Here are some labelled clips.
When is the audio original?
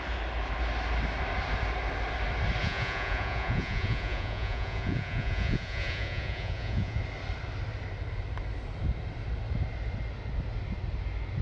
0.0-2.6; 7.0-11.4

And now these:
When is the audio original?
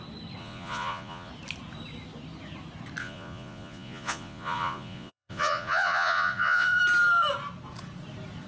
0.0-0.4; 1.3-3.0; 6.8-8.5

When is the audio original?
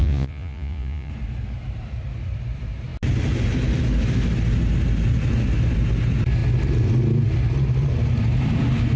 1.1-9.0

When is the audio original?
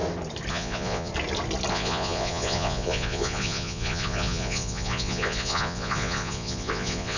0.0-0.5; 1.1-1.7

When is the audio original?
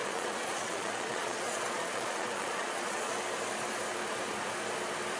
3.1-5.2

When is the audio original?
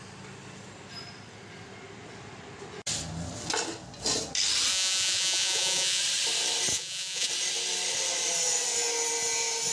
0.0-4.7; 6.0-6.7; 7.3-9.7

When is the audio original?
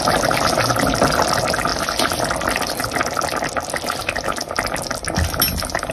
0.0-5.9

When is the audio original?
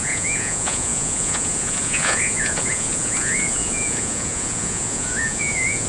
none